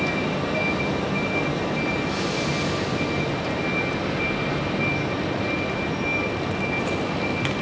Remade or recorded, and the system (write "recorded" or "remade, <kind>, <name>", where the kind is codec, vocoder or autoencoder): recorded